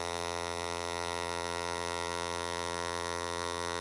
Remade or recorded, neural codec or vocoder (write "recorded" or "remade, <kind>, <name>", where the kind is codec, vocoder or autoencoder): remade, vocoder, BigVGAN v2